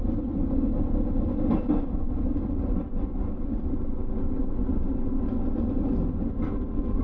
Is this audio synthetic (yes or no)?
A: no